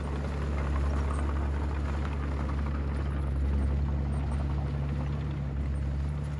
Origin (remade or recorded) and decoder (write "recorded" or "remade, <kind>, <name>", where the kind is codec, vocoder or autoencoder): recorded